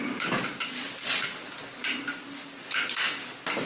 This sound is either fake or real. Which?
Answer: real